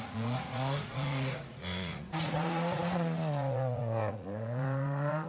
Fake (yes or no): yes